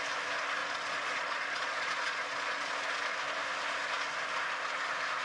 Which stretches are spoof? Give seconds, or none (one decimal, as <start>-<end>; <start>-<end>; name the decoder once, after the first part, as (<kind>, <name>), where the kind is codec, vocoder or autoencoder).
0.6-2.7 (vocoder, Vocos)